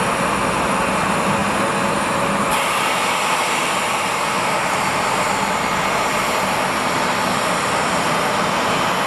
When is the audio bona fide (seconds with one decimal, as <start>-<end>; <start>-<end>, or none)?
0.0-9.1

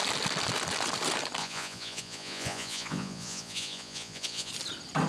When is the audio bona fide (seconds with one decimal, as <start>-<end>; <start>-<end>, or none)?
0.0-1.4; 4.5-5.1

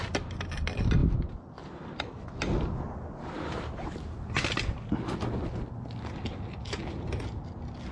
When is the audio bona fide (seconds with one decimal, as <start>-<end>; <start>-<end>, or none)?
0.0-7.9

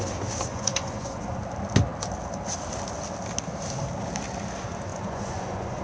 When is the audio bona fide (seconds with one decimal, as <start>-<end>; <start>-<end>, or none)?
0.0-0.5; 1.4-4.9

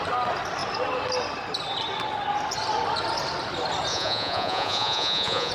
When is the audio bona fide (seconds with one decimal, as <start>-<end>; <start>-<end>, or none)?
0.0-3.9

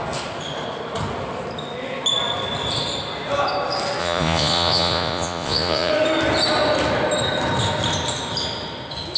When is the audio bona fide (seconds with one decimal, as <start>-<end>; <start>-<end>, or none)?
0.0-4.0; 5.9-9.2